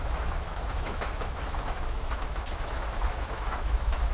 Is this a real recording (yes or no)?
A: no